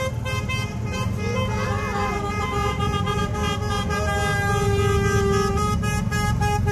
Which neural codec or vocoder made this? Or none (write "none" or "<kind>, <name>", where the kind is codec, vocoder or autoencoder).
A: none